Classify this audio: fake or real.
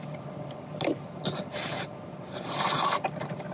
real